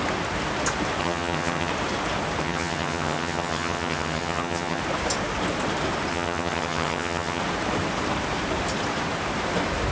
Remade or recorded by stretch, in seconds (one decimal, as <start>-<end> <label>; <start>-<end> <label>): 0.0-1.0 recorded; 1.0-1.7 remade; 1.7-2.4 recorded; 2.4-4.8 remade; 4.8-6.1 recorded; 6.1-7.4 remade; 7.4-9.9 recorded